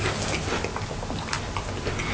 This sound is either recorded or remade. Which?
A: recorded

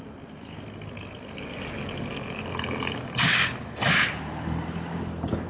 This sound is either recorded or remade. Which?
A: recorded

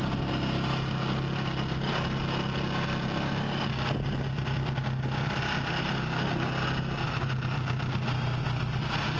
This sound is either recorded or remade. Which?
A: recorded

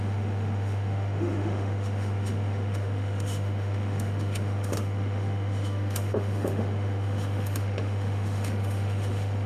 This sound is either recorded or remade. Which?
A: remade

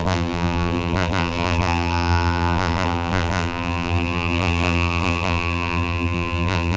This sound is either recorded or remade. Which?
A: remade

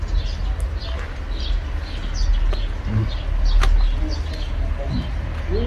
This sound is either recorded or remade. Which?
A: recorded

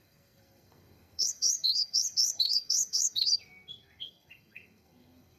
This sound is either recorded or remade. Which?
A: remade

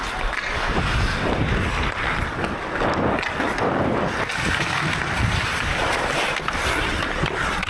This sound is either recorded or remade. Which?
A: recorded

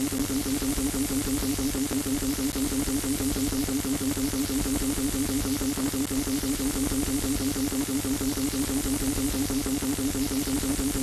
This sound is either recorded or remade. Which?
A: recorded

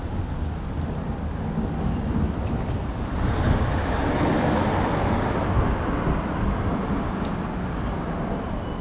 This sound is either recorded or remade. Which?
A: recorded